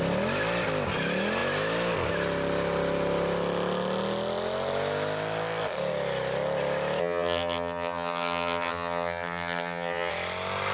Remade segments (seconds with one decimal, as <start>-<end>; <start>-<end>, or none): 7.0-10.1